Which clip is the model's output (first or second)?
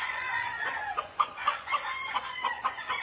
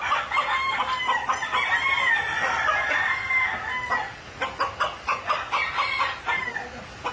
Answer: first